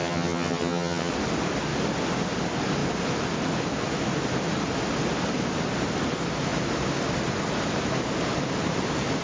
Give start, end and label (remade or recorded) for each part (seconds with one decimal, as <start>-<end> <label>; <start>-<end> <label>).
0.0-1.1 remade; 1.1-9.2 recorded